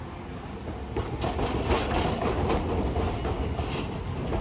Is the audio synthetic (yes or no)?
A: no